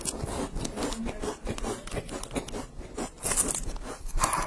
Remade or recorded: recorded